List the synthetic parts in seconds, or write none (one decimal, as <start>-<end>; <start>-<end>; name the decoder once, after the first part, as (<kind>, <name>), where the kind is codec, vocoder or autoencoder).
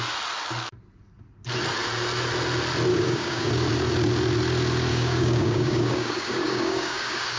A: 2.9-3.5 (codec, DAC); 4.9-7.4